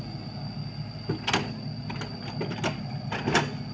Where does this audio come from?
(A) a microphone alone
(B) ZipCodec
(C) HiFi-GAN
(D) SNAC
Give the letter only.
A